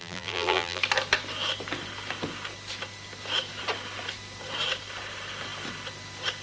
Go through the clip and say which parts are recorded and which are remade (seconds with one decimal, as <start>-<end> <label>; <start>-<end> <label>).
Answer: 0.0-0.8 remade; 0.8-6.4 recorded